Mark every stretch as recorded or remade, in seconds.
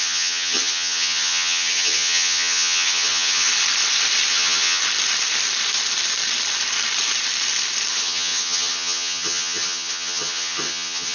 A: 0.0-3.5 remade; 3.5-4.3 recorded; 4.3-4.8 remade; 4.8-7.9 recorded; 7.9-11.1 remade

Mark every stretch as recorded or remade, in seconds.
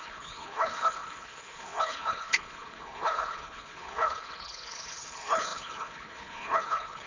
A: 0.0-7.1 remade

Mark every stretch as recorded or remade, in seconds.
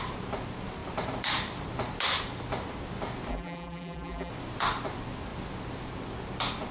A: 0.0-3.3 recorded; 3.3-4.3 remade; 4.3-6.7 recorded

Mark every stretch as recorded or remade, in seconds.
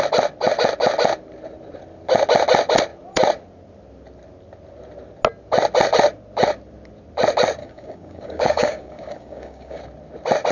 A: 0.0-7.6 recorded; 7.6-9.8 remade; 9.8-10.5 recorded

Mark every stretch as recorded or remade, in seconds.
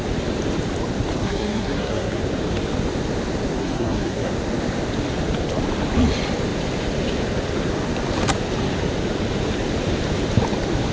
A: 0.0-1.2 recorded; 1.2-2.2 remade; 2.2-3.6 recorded; 3.6-4.3 remade; 4.3-10.9 recorded